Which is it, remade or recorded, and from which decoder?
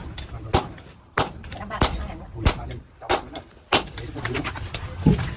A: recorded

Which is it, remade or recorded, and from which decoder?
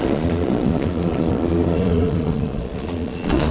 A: remade, vocoder, Vocos